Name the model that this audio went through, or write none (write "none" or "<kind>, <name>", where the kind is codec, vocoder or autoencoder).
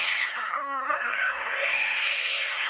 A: codec, SNAC